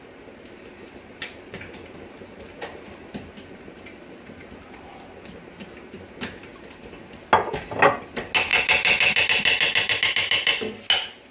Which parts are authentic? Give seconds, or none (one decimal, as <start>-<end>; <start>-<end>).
0.0-11.3